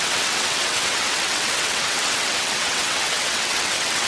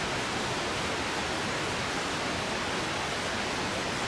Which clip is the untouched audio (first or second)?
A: second